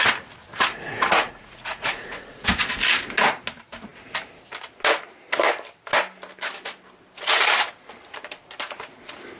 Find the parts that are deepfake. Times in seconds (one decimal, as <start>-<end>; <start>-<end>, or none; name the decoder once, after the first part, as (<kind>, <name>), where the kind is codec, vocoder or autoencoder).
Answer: 0.7-2.5 (vocoder, Vocos)